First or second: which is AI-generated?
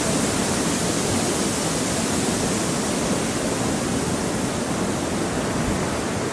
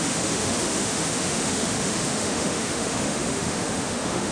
second